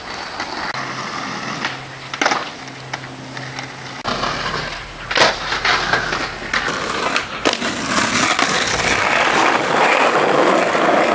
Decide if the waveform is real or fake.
real